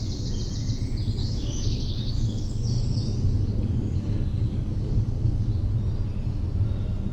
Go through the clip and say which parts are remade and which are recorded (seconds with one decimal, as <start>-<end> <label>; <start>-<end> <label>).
0.0-1.2 recorded; 1.2-5.5 remade; 5.5-7.1 recorded